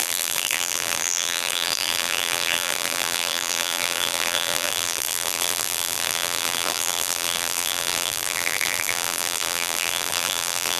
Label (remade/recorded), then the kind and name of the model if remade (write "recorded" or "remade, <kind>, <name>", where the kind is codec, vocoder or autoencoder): remade, vocoder, BigVGAN v2